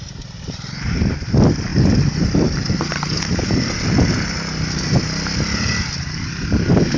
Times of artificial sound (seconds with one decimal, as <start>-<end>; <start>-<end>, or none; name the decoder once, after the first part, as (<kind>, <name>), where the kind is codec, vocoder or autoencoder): none